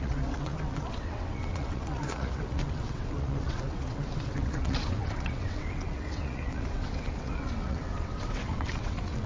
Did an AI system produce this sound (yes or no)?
yes